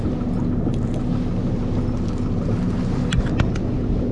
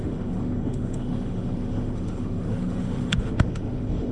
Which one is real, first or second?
first